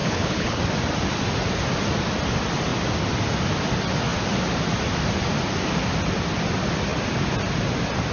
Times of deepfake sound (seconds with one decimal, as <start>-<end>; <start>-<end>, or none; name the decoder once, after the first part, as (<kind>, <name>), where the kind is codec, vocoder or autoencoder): 0.0-0.6 (codec, HILCodec)